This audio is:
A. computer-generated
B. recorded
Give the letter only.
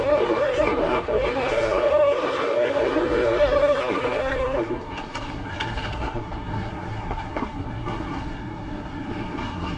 A